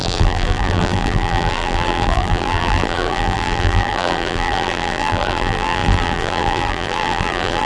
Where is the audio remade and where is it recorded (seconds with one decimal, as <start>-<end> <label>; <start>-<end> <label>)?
0.0-7.7 remade